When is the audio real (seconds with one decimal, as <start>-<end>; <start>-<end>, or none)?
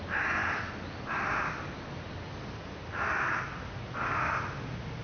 0.0-5.0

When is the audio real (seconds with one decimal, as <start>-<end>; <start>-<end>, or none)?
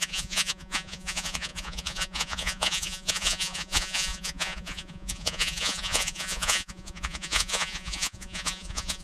none